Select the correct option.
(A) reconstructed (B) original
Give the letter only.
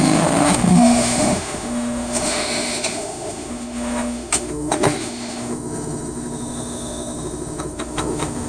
A